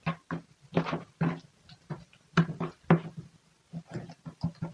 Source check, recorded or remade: recorded